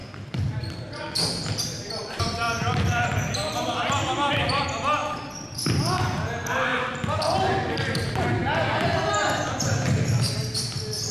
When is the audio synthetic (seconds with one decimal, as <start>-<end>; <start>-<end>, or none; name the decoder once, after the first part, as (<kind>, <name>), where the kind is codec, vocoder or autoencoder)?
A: 0.0-4.6 (vocoder, BigVGAN v2); 5.0-6.0; 6.7-7.4